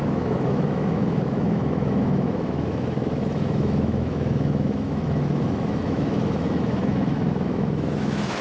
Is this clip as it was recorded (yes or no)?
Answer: no